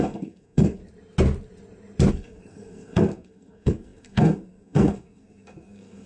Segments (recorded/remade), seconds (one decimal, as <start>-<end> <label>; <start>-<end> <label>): 0.0-0.8 remade; 0.8-2.1 recorded; 2.1-6.1 remade